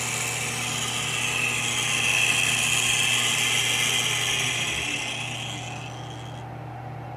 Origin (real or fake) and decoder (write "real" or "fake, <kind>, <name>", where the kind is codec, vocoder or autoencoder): real